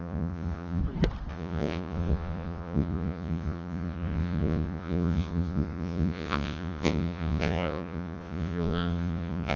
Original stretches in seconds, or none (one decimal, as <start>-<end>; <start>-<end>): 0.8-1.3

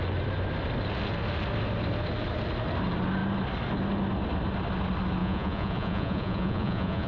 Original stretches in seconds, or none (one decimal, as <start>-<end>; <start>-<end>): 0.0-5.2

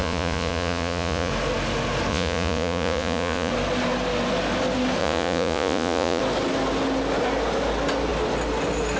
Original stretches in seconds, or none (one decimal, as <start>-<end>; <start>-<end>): 1.3-2.1; 3.5-5.0; 6.2-9.0

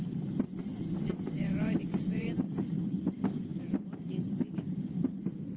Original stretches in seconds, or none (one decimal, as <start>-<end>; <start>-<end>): 0.0-0.7; 2.3-5.6

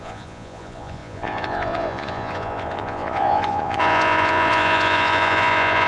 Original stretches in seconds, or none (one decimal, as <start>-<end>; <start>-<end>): none

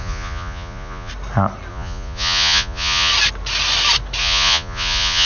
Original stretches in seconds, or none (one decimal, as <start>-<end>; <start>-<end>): 1.1-1.7; 3.1-4.2